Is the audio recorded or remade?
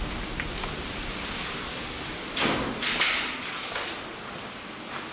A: recorded